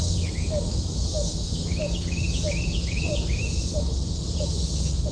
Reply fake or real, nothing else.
fake